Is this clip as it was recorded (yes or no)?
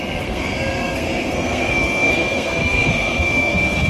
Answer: no